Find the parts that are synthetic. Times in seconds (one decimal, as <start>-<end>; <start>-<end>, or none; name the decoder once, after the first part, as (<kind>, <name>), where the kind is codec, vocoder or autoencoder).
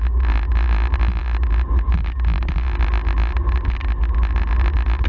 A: none